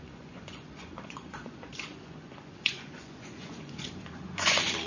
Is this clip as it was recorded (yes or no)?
no